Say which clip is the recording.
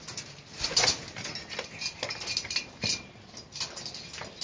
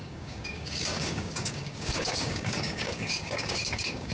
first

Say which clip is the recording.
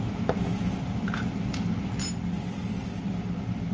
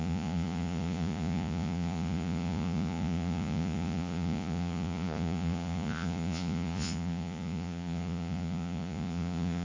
first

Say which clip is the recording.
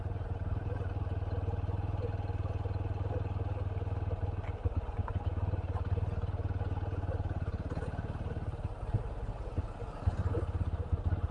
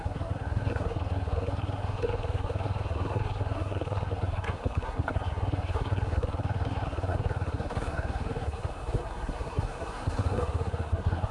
first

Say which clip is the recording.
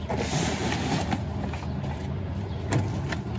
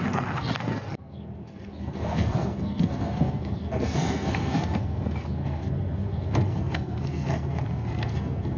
first